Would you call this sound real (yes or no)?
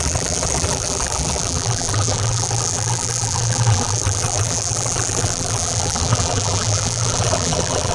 no